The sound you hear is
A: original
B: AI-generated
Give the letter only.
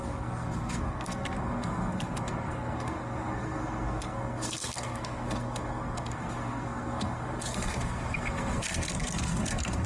B